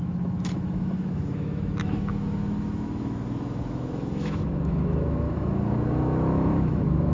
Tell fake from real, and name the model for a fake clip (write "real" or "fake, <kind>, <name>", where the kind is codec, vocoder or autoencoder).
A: fake, autoencoder, DAC-VAE